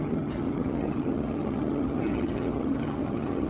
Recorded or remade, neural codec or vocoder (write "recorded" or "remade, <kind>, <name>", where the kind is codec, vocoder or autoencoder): remade, vocoder, HiFi-GAN